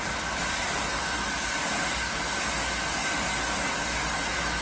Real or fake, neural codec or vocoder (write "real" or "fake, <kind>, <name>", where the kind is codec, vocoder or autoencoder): fake, vocoder, BigVGAN v2